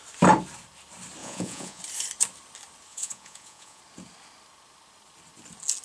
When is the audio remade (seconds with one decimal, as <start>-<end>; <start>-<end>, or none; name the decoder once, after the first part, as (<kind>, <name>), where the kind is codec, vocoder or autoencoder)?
1.2-1.8 (vocoder, Vocos); 2.9-3.8